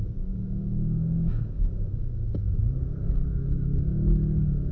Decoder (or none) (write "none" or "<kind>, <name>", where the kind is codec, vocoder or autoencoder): codec, DAC